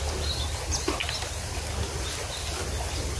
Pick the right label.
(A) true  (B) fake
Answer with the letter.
A